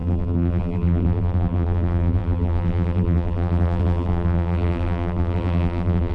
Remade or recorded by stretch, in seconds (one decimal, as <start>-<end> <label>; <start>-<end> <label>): 0.0-6.1 remade